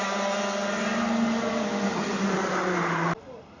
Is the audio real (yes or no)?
yes